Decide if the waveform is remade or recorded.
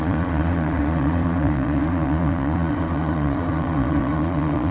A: remade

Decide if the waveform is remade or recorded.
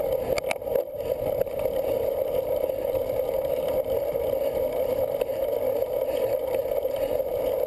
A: recorded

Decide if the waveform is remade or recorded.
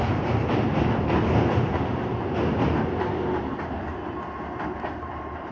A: recorded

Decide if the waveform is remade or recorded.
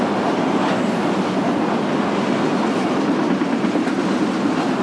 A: recorded